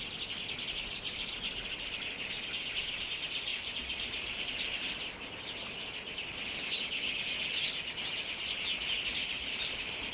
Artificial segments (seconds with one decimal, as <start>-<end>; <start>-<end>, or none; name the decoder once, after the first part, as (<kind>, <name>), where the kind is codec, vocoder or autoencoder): 3.5-4.5 (vocoder, BigVGAN v2); 9.2-10.1